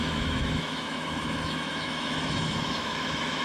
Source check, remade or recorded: remade